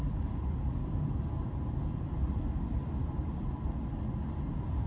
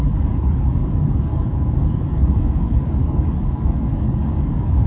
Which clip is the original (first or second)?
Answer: first